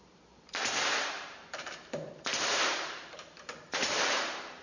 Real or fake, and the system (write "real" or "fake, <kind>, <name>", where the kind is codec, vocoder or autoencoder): fake, vocoder, BigVGAN v2